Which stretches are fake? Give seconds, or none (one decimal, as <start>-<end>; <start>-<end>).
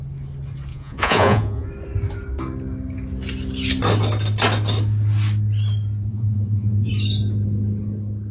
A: 0.7-1.7; 6.1-6.9